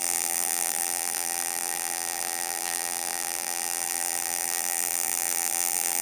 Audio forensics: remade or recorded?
remade